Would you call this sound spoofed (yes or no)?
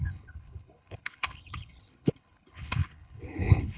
yes